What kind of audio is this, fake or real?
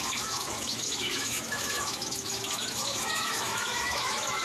fake